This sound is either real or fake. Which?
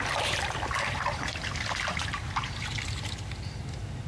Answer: fake